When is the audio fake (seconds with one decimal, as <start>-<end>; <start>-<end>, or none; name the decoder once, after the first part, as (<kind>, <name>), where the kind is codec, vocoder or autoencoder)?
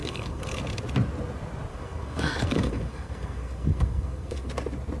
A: 0.0-0.6 (codec, SNAC); 1.7-4.5